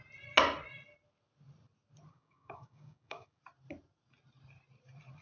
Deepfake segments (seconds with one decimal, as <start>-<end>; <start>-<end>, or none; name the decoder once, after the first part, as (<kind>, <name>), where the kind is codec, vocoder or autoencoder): 2.1-3.4 (codec, DAC)